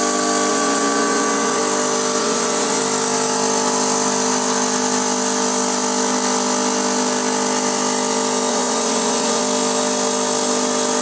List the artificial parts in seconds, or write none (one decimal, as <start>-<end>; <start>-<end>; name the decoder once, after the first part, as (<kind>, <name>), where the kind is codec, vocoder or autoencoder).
0.5-1.6 (vocoder, Vocos); 2.2-2.8; 8.5-9.4